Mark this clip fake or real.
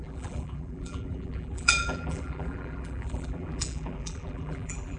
fake